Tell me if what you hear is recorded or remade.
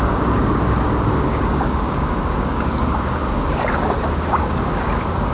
remade